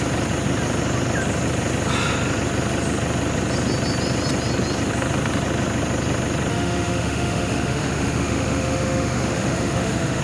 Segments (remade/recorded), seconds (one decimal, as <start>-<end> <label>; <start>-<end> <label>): 0.0-6.5 recorded; 6.5-10.2 remade